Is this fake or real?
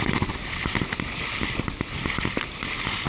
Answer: real